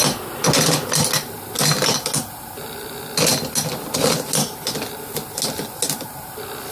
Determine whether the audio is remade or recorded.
recorded